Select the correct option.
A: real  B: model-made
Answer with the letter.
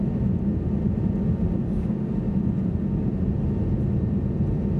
A